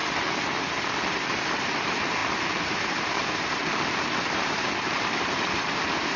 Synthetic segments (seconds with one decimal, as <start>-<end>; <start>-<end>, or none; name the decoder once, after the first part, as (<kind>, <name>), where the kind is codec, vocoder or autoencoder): 1.3-6.2 (vocoder, BigVGAN v2)